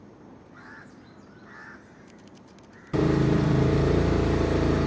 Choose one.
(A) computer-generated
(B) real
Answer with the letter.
A